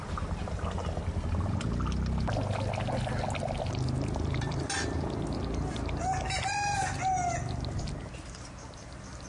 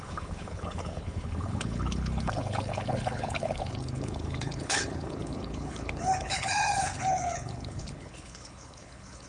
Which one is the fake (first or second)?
second